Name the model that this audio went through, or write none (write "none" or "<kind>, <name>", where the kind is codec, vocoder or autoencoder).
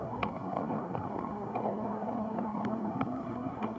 codec, SNAC